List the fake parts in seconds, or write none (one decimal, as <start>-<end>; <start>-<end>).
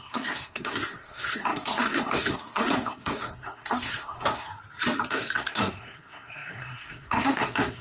0.0-4.5; 5.1-7.8